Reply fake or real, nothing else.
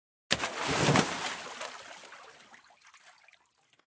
real